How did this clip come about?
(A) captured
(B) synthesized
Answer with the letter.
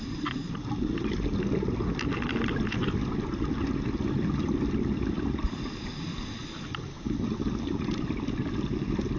A